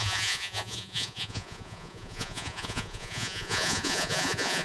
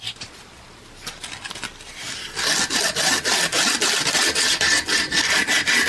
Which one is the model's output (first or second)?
first